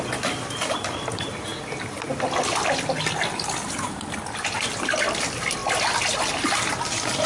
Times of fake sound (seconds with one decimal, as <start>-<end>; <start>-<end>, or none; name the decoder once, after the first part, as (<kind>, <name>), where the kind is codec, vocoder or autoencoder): none